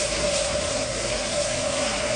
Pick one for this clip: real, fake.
fake